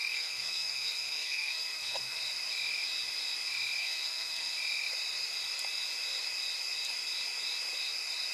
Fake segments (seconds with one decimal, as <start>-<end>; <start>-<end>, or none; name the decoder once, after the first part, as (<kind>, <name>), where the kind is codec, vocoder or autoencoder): 0.0-2.2 (codec, SNAC); 3.8-4.5